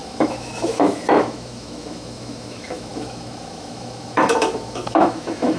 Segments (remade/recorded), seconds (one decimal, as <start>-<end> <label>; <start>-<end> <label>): 0.0-5.6 remade